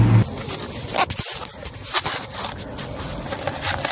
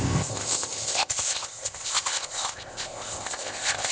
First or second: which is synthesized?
second